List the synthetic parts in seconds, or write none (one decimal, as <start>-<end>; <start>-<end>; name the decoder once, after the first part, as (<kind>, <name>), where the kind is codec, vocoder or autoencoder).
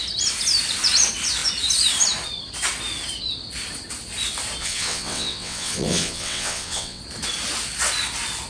4.6-7.0 (vocoder, WaveNeXt)